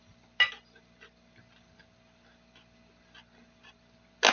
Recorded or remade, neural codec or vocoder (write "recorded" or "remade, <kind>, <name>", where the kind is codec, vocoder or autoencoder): recorded